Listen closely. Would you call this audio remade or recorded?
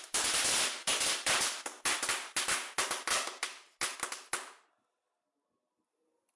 recorded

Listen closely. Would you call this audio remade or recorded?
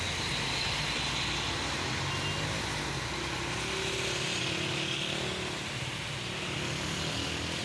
recorded